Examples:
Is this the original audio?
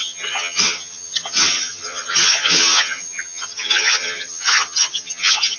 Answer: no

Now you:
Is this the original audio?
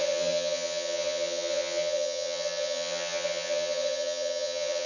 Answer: no